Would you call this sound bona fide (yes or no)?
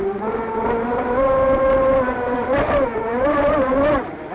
yes